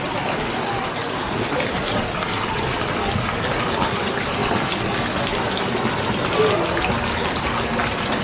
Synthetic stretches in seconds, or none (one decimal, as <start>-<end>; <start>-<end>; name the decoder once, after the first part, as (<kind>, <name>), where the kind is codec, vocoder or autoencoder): 1.2-2.6 (vocoder, BigVGAN v2)